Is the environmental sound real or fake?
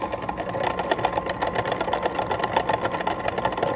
real